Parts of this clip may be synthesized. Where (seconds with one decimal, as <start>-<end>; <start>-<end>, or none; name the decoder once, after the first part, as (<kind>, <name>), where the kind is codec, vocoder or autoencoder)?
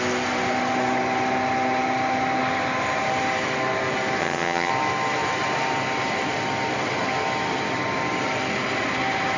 4.2-4.7 (vocoder, HiFi-GAN)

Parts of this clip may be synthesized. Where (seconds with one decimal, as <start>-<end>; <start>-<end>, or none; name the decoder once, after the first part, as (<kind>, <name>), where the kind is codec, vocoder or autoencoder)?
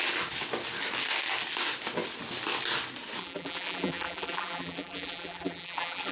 3.2-6.1 (vocoder, BigVGAN v2)